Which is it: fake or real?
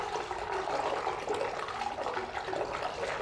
real